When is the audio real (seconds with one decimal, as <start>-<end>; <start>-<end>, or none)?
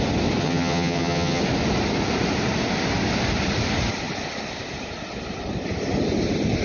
0.0-0.4; 1.4-6.6